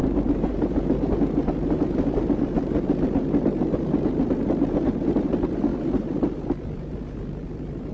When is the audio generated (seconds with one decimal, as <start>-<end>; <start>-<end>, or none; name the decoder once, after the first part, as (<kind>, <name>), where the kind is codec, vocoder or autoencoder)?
0.0-7.9 (vocoder, BigVGAN v2)